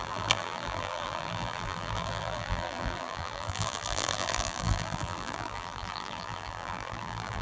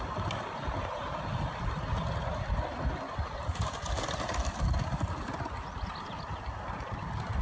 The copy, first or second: first